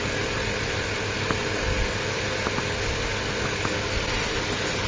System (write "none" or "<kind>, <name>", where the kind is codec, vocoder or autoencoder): none